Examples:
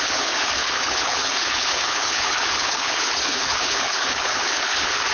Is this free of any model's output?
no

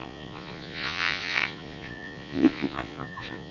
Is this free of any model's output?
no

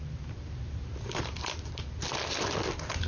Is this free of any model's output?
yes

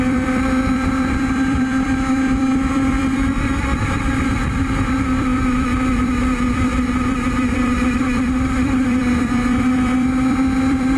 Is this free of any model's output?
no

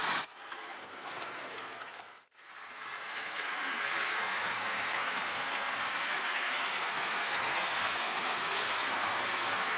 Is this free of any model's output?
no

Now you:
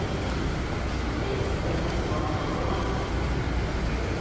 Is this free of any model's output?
yes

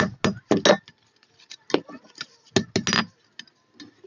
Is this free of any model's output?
yes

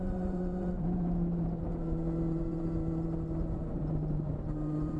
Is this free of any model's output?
no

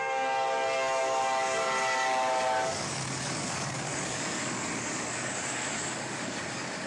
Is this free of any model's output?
no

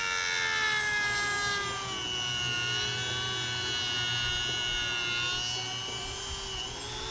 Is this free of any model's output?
yes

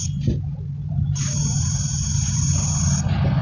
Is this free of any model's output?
yes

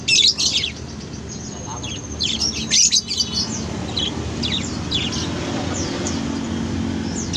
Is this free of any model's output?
yes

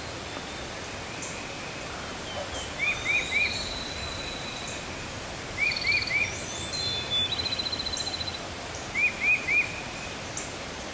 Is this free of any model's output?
yes